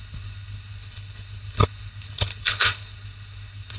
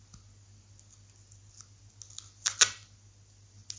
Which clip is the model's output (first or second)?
first